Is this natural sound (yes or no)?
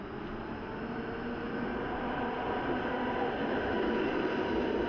yes